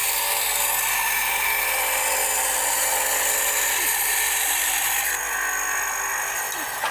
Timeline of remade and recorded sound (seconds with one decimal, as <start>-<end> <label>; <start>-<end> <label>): 0.0-6.9 recorded